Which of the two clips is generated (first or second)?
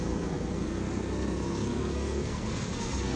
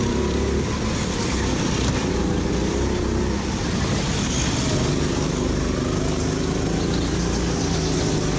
first